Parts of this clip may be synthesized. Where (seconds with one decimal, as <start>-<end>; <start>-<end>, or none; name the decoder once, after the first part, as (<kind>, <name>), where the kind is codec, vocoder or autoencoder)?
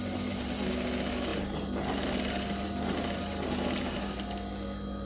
none